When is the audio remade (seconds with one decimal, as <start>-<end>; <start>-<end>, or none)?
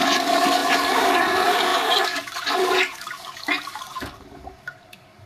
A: 0.0-5.3